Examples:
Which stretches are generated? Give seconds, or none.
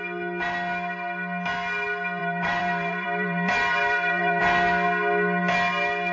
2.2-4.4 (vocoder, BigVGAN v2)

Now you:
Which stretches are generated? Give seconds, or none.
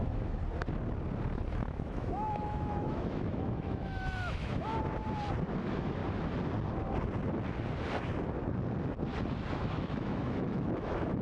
0.0-0.4 (autoencoder, DAC-VAE); 1.5-4.7; 5.5-6.0; 9.5-11.2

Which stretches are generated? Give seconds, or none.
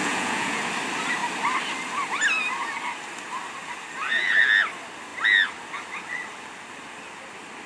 0.0-0.6 (vocoder, Vocos)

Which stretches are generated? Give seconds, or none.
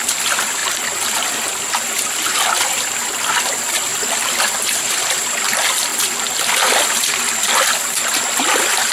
0.0-5.9 (vocoder, BigVGAN v2); 8.4-8.9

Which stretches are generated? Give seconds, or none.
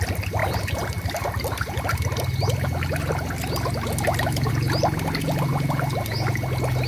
none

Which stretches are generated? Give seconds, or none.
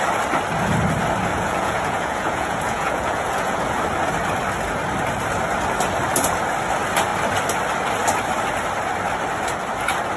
1.3-3.8 (vocoder, Vocos)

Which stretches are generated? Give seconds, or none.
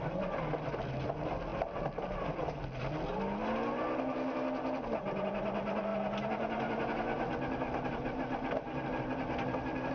none